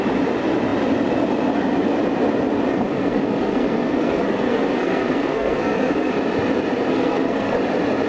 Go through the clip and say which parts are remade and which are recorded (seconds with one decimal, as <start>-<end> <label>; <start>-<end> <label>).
0.0-2.7 recorded; 2.7-6.1 remade; 6.1-6.9 recorded; 6.9-7.6 remade; 7.6-8.1 recorded